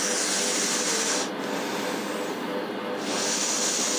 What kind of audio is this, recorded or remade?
recorded